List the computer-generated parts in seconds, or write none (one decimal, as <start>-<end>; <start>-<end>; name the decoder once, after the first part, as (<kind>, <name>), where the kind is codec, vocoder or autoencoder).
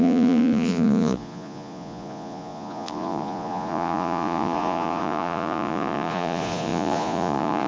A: 0.0-7.7 (vocoder, Vocos)